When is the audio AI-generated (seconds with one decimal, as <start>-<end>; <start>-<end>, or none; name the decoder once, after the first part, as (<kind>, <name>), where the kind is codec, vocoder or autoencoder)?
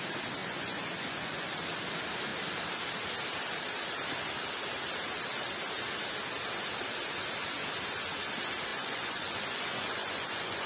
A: 0.4-1.5 (vocoder, Vocos); 8.7-10.7